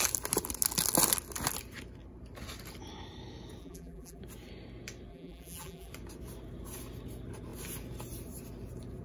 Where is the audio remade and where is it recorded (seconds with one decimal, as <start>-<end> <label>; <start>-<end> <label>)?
0.0-3.6 recorded; 3.6-4.2 remade; 4.2-5.1 recorded; 5.1-5.9 remade; 5.9-9.0 recorded